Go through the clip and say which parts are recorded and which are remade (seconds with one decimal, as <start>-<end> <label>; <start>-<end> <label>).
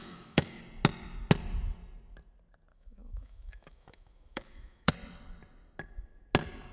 0.0-0.6 remade; 0.6-2.7 recorded; 2.7-4.9 remade; 4.9-6.7 recorded